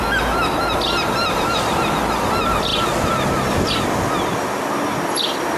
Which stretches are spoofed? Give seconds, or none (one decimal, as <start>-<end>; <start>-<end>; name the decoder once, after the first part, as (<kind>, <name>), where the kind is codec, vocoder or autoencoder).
none